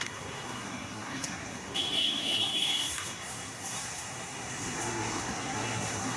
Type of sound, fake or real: fake